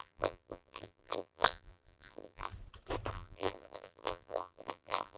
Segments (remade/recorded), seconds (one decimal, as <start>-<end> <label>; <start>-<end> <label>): 0.0-2.5 remade; 2.5-3.1 recorded; 3.1-5.2 remade